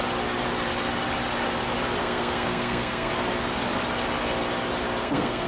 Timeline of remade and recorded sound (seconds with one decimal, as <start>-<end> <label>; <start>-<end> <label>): 0.0-2.0 recorded; 2.0-3.1 remade; 3.1-5.0 recorded; 5.0-5.5 remade